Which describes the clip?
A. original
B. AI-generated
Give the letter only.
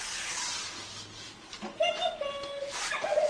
A